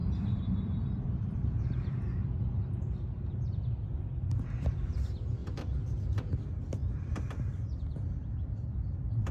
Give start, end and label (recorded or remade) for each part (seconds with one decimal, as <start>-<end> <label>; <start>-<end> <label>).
0.0-3.5 remade; 3.5-5.4 recorded; 5.4-6.3 remade; 6.3-6.8 recorded; 6.8-7.8 remade; 7.8-9.3 recorded